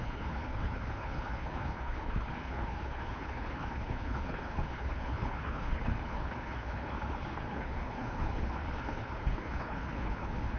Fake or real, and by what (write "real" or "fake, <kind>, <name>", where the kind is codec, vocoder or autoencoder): fake, codec, HILCodec